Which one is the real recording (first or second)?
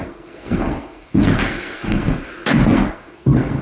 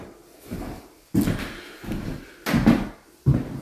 second